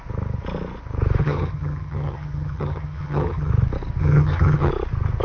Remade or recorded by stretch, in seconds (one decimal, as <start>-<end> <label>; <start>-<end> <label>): 0.0-1.2 recorded; 1.2-3.5 remade; 3.5-4.0 recorded; 4.0-4.7 remade; 4.7-5.2 recorded